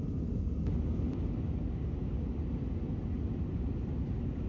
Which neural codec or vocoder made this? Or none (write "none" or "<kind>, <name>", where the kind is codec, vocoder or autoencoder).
none